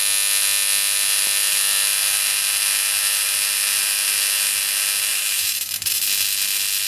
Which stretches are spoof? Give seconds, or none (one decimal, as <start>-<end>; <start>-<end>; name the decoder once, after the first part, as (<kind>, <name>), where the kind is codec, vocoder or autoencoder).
5.1-6.0 (autoencoder, DAC-VAE)